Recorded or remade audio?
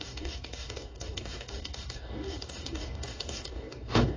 remade